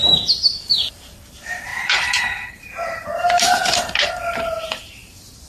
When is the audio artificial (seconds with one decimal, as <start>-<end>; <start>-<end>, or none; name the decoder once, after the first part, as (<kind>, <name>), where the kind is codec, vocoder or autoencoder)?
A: 0.0-5.5 (vocoder, BigVGAN v2)